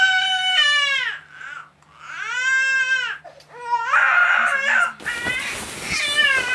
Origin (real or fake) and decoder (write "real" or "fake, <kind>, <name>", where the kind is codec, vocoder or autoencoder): real